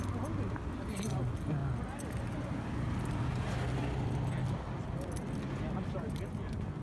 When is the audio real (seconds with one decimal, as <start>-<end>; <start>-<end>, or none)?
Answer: 0.0-6.8